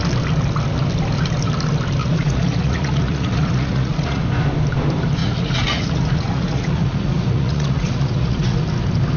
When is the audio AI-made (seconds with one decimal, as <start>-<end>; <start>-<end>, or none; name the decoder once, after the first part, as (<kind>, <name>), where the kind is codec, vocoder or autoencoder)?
2.0-4.2 (vocoder, Vocos); 5.2-8.6